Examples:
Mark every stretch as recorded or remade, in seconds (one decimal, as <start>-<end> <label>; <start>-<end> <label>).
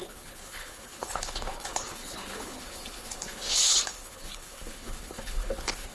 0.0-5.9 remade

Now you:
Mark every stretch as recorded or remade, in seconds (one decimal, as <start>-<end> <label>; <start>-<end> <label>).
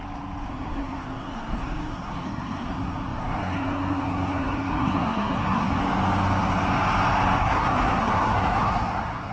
0.0-0.5 recorded; 0.5-5.8 remade; 5.8-7.4 recorded; 7.4-9.3 remade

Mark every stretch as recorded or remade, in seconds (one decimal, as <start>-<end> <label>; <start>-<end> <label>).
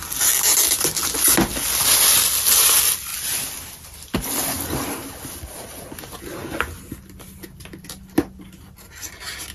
0.0-9.5 recorded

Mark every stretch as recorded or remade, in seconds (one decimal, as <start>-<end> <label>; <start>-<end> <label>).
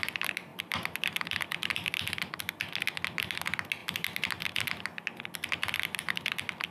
0.0-0.5 recorded; 0.5-2.3 remade; 2.3-3.8 recorded; 3.8-4.3 remade; 4.3-6.7 recorded